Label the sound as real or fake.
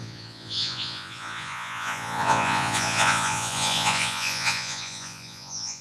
fake